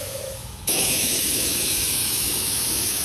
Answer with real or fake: fake